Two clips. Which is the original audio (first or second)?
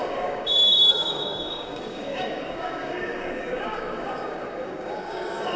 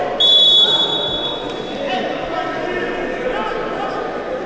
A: second